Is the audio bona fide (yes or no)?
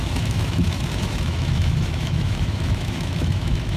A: no